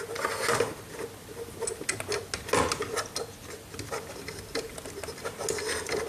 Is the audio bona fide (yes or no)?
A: yes